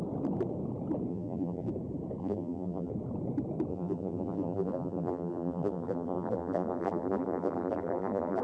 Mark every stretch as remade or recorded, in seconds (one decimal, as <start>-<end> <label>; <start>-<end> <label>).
0.0-1.1 recorded; 1.1-1.7 remade; 1.7-2.2 recorded; 2.2-2.9 remade; 2.9-3.7 recorded; 3.7-8.4 remade